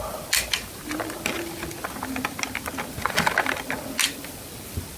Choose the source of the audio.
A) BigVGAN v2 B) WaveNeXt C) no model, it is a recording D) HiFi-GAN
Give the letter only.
C